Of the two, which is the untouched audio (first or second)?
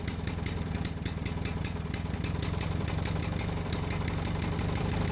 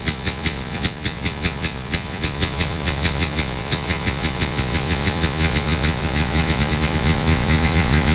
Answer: first